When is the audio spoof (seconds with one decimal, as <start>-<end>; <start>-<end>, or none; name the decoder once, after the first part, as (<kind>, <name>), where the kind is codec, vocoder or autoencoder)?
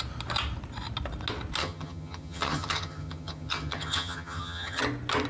1.6-4.8 (vocoder, HiFi-GAN)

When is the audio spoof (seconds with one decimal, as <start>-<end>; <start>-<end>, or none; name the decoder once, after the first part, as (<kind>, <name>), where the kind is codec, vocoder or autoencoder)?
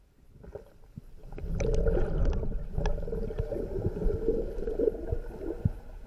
none